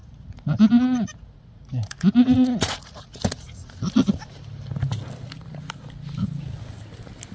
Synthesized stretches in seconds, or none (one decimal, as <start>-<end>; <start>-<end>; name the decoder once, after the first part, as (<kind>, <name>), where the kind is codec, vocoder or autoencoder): 0.0-4.1 (vocoder, Vocos)